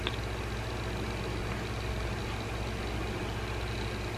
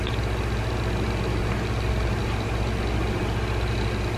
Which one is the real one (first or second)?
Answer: first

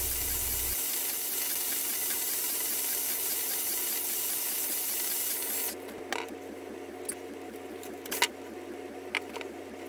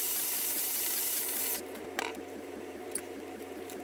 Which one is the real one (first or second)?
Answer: first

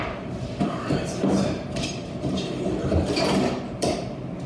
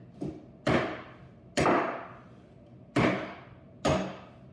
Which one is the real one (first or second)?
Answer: second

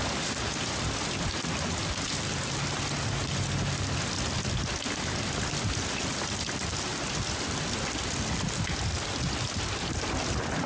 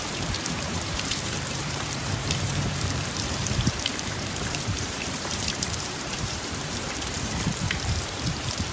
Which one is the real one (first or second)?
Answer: first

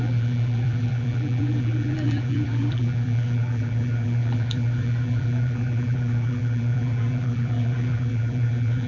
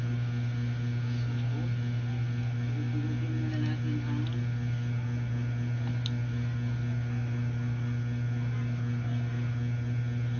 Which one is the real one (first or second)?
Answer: second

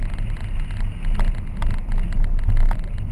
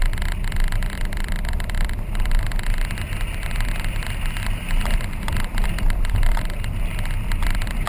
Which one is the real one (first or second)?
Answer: first